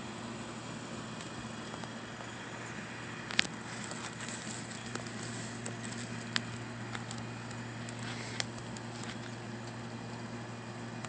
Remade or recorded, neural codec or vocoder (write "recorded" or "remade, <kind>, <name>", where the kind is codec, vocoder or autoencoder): recorded